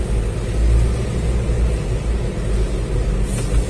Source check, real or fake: real